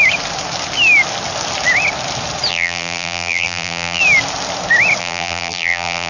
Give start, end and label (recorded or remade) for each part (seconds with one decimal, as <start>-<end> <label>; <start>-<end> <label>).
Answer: 0.0-2.5 recorded; 2.5-4.0 remade; 4.0-5.0 recorded; 5.0-6.1 remade